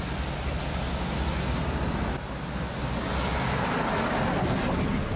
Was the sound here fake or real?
real